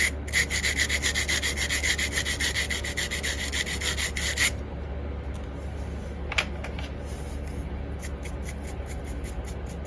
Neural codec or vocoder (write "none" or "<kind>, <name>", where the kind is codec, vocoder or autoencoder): none